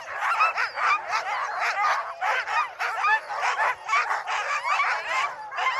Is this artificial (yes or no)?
no